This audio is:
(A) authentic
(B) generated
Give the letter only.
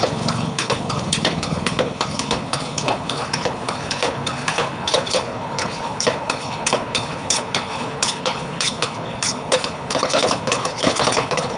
B